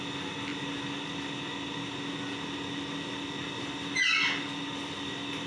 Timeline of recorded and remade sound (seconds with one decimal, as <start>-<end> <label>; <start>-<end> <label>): 0.0-5.5 recorded